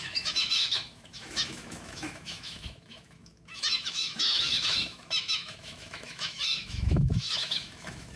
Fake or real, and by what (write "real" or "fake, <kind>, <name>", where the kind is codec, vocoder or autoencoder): fake, autoencoder, DAC-VAE